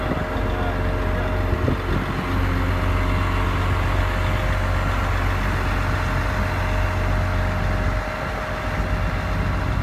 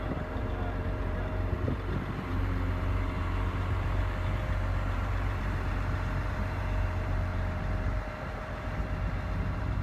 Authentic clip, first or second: first